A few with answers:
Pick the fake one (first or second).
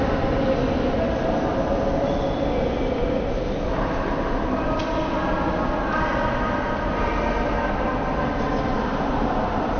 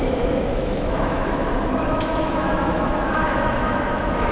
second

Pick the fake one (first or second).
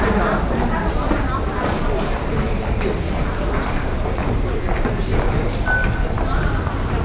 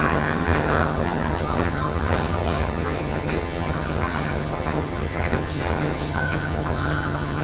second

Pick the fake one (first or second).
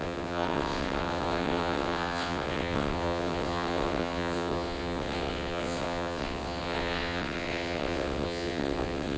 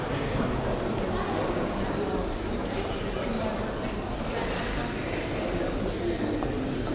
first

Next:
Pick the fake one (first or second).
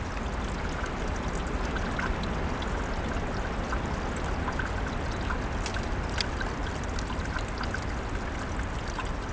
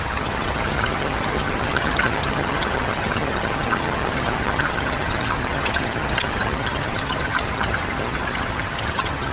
second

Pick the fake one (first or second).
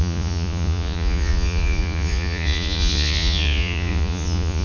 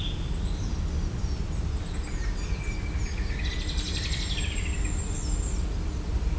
first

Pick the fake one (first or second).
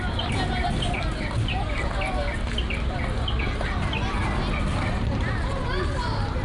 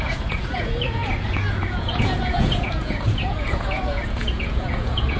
second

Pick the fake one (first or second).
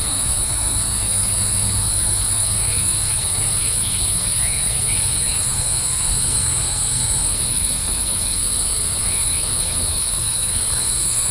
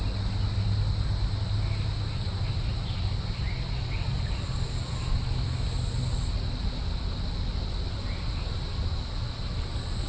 first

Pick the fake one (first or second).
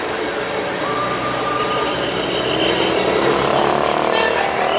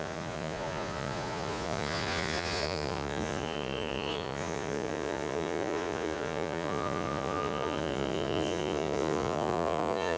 second